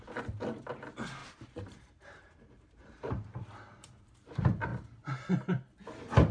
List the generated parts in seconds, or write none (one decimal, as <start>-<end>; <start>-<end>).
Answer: 1.2-3.3